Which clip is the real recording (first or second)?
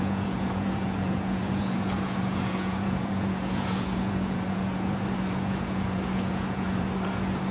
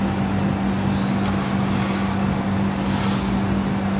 second